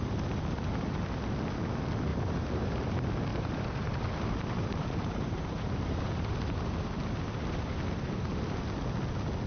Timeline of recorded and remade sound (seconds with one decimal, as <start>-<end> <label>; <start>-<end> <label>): 0.0-2.1 recorded; 2.1-2.7 remade; 2.7-3.3 recorded; 3.3-6.7 remade; 6.7-9.5 recorded